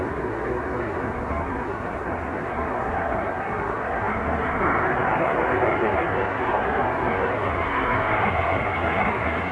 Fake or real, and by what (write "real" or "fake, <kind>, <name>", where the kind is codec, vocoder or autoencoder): fake, codec, SNAC